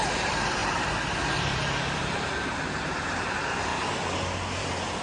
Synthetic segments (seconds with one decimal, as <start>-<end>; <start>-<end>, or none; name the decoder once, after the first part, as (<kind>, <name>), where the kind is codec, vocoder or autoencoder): 0.0-3.7 (vocoder, BigVGAN v2); 4.6-5.0